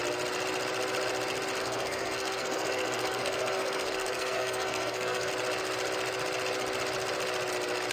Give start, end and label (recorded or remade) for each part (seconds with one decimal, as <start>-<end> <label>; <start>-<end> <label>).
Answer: 0.0-1.6 recorded; 1.6-5.3 remade; 5.3-7.9 recorded